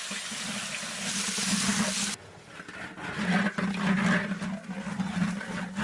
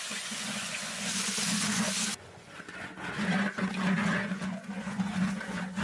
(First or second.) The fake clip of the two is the second